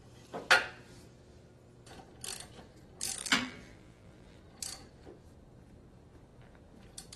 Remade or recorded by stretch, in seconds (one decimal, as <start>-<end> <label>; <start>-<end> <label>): 0.0-3.2 recorded; 3.2-4.4 remade; 4.4-7.2 recorded